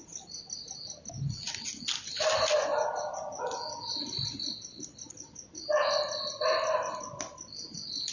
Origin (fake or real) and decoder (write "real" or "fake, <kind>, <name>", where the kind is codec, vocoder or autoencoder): real